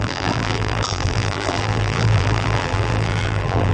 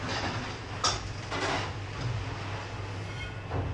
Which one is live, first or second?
second